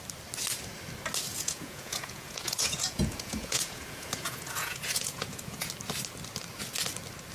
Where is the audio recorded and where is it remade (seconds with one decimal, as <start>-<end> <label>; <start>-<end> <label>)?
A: 0.0-1.3 recorded; 1.3-5.7 remade; 5.7-7.3 recorded